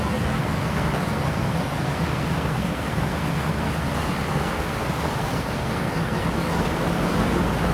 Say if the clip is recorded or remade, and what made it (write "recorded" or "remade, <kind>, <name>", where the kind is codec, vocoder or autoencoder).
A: remade, codec, SNAC